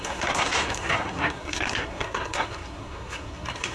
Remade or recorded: remade